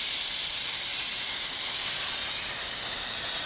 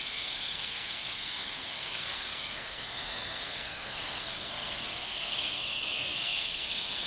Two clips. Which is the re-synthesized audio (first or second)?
second